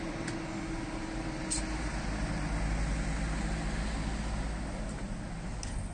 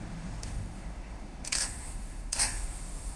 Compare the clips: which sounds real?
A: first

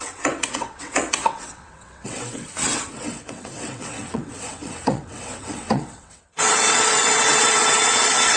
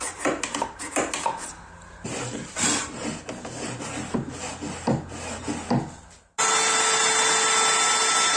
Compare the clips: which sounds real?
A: second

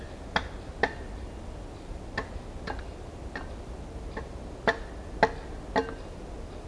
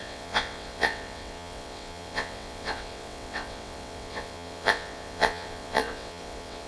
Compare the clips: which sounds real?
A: first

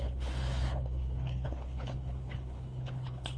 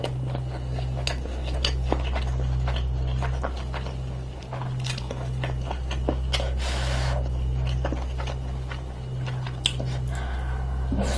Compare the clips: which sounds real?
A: second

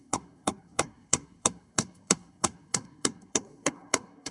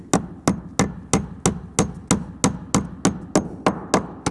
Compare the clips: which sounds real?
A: second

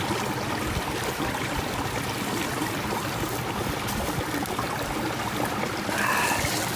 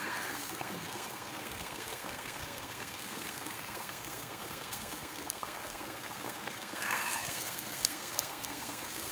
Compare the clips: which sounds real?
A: first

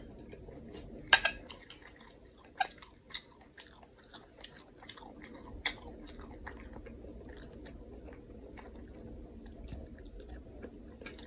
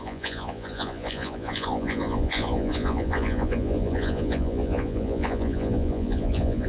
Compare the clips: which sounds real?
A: first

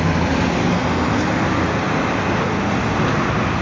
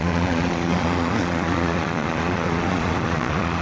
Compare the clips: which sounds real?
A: first